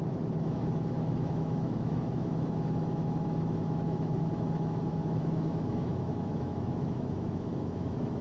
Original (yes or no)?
no